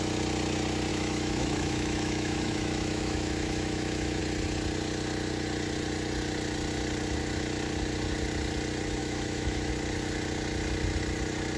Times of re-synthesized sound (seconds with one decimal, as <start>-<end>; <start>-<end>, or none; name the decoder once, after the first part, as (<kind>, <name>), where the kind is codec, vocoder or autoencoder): 0.9-4.2 (autoencoder, DAC-VAE); 9.0-9.7